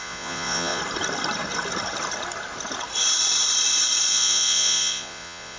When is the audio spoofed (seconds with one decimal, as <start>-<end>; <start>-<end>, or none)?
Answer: 0.0-0.8; 4.1-5.6